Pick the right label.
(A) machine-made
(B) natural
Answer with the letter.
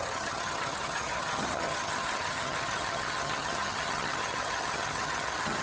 A